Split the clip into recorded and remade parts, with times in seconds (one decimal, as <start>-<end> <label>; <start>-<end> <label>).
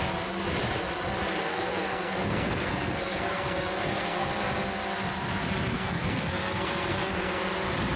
0.0-1.5 recorded; 1.5-4.3 remade; 4.3-5.7 recorded; 5.7-7.4 remade; 7.4-8.0 recorded